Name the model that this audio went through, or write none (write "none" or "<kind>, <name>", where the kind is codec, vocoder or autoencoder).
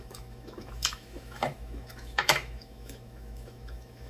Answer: autoencoder, DAC-VAE